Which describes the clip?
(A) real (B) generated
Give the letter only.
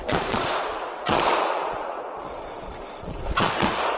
B